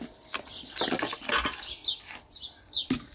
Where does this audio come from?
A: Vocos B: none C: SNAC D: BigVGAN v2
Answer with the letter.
B